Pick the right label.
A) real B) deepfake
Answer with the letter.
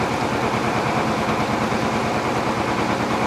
A